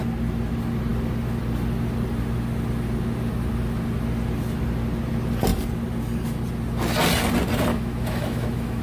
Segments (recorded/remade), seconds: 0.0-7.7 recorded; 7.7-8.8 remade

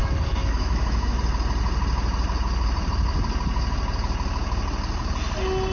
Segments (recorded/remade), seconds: 0.0-1.2 remade; 1.2-5.7 recorded

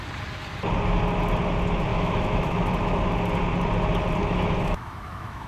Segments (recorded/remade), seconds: 0.0-1.9 recorded; 1.9-3.0 remade; 3.0-4.2 recorded; 4.2-5.5 remade

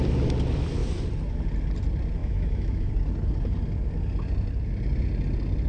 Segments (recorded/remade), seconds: 0.0-2.2 recorded; 2.2-2.9 remade; 2.9-5.7 recorded

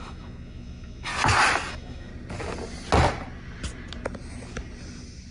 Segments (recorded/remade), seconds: 0.0-1.1 remade; 1.1-1.7 recorded; 1.7-2.1 remade; 2.1-5.3 recorded